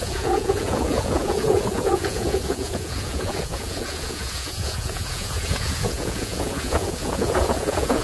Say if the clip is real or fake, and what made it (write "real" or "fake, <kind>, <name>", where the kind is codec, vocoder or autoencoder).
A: fake, vocoder, Vocos